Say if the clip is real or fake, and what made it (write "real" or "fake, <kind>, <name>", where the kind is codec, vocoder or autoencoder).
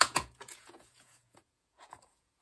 fake, vocoder, Vocos